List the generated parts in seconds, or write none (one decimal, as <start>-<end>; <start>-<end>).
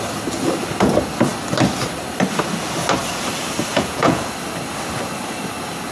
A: 3.7-4.2